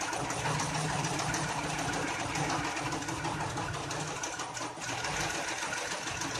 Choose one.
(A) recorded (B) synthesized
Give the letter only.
A